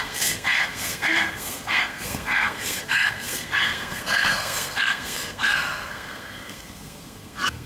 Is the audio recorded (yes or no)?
no